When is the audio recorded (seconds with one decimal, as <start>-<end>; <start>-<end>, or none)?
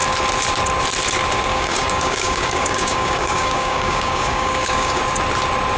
0.0-1.5; 5.0-5.8